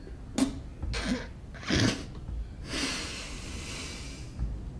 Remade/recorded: recorded